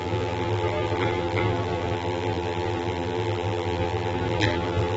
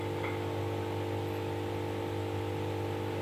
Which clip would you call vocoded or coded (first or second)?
first